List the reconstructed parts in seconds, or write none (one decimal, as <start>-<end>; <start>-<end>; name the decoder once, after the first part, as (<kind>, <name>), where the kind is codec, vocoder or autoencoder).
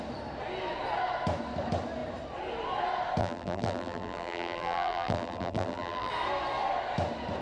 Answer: 3.2-6.1 (vocoder, BigVGAN v2)